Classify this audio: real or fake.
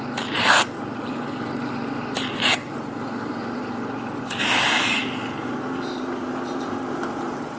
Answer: fake